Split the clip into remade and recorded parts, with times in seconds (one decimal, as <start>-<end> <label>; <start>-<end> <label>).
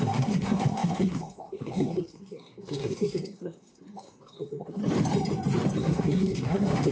0.0-4.8 remade; 4.8-5.8 recorded; 5.8-6.9 remade